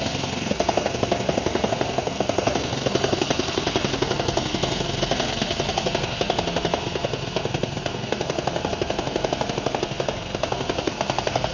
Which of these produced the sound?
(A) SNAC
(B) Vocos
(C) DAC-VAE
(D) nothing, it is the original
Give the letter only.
A